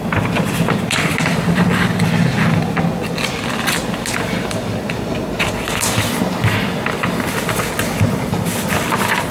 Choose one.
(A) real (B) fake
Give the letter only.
A